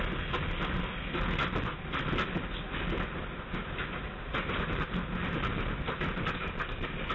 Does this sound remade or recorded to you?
recorded